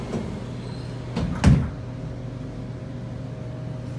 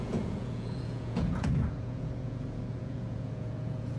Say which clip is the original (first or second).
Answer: first